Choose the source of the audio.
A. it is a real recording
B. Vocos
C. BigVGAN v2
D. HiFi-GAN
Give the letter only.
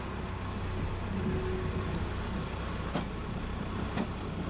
A